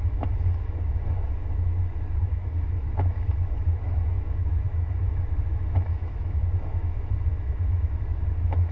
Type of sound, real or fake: fake